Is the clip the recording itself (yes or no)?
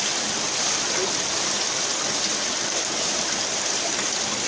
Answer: yes